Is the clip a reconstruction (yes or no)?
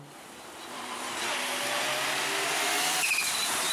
no